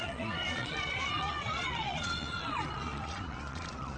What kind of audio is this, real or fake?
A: fake